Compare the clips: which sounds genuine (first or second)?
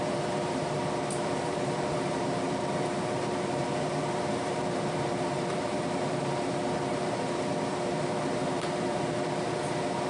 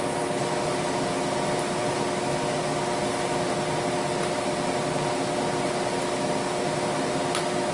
second